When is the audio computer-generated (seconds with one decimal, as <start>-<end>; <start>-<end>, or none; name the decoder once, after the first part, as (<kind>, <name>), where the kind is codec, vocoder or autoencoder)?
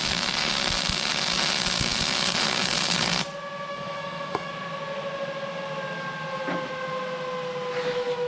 3.7-4.5 (codec, DAC)